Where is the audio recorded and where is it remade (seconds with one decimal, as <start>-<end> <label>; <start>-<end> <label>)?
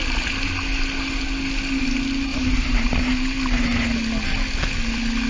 0.0-2.3 recorded; 2.3-2.9 remade; 2.9-5.3 recorded